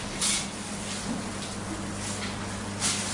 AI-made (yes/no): no